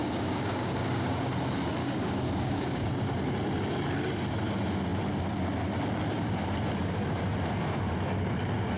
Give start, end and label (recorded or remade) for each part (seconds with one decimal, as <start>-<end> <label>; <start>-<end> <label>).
0.0-1.3 remade; 1.3-1.8 recorded; 1.8-2.9 remade; 2.9-8.8 recorded